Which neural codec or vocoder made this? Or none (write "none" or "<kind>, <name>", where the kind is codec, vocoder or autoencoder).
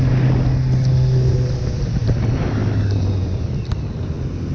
none